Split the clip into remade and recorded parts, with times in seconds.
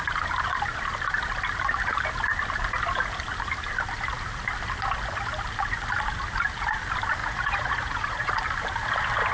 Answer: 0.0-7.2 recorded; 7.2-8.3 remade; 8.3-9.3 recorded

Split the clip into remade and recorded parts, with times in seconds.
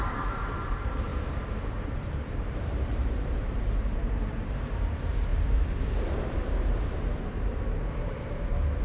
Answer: 0.0-8.8 remade